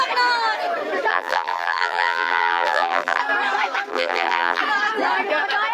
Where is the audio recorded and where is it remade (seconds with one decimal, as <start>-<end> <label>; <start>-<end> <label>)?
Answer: 0.0-1.1 recorded; 1.1-3.2 remade; 3.2-3.9 recorded; 3.9-4.6 remade; 4.6-5.7 recorded